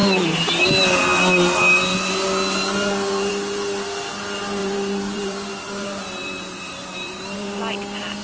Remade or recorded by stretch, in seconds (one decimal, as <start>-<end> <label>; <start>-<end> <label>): 0.0-0.7 remade; 0.7-4.6 recorded; 4.6-7.6 remade; 7.6-8.2 recorded